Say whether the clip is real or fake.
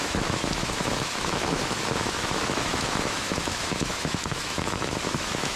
fake